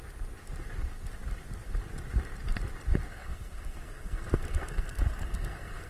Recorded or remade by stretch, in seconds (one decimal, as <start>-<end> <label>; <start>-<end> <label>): 0.0-3.1 recorded; 3.1-5.9 remade